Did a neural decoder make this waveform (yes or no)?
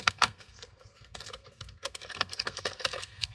yes